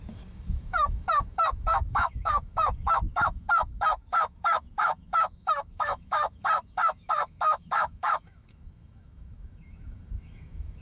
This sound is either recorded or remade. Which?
remade